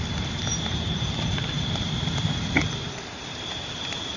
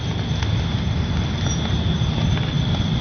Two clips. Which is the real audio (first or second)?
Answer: second